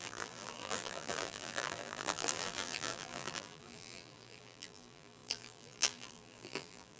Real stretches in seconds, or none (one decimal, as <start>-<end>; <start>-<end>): none